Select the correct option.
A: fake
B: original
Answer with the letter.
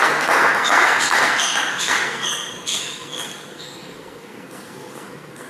A